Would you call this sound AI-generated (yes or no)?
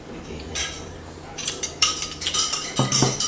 yes